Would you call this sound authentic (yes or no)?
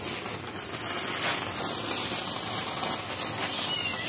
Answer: yes